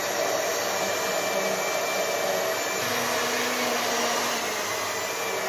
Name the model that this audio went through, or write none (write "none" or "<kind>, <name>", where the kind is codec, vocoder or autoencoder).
none